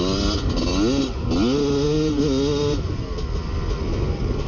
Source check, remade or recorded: recorded